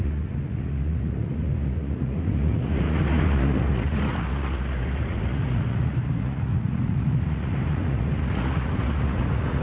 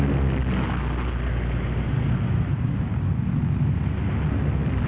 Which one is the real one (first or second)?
second